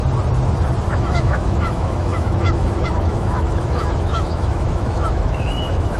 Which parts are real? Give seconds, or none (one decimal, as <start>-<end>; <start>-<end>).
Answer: 0.0-0.9